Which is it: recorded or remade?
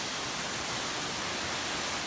recorded